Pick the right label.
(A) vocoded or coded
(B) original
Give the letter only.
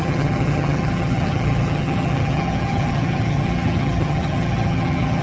A